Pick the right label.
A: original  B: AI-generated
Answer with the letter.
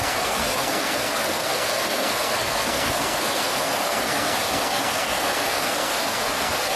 B